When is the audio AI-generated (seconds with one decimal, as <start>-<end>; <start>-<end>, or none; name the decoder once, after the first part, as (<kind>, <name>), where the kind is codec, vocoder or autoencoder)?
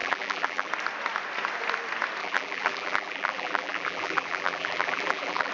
0.0-0.7 (vocoder, BigVGAN v2); 2.2-5.5